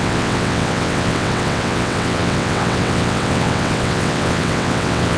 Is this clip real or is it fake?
fake